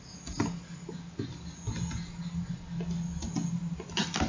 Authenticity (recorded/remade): recorded